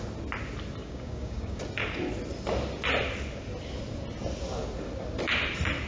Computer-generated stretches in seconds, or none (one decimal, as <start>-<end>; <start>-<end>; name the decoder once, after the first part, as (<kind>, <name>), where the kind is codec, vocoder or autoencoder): 0.8-1.6 (codec, DAC)